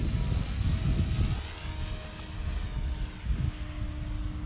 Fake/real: real